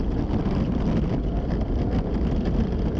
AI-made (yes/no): yes